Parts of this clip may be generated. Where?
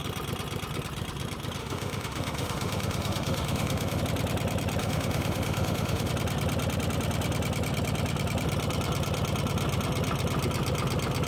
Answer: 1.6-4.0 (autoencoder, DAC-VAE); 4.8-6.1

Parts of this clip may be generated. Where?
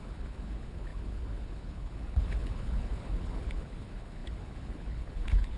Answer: 0.0-5.6 (codec, HILCodec)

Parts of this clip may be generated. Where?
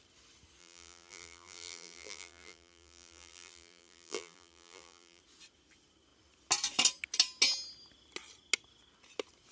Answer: 0.6-5.2 (vocoder, BigVGAN v2)